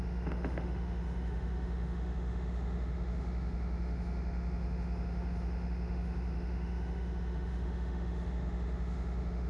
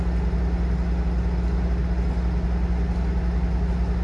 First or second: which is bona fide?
second